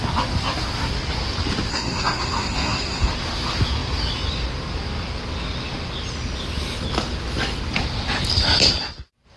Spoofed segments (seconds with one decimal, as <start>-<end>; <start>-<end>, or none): 1.7-3.1